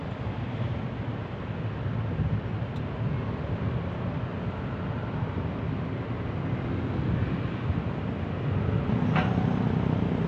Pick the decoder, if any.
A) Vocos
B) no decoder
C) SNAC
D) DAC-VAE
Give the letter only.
B